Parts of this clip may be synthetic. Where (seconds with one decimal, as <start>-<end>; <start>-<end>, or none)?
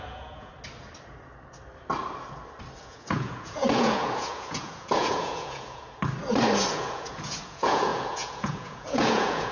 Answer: 0.0-0.5; 2.8-6.0; 6.7-9.5